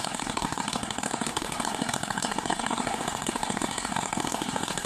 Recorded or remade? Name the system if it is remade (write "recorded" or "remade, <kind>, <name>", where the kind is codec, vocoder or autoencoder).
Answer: remade, codec, SNAC